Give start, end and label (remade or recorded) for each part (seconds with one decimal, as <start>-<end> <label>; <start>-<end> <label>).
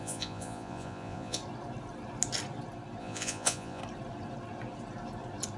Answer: 0.0-1.4 remade; 1.4-3.0 recorded; 3.0-3.8 remade; 3.8-5.6 recorded